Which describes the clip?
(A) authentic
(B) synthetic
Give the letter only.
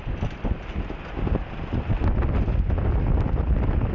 A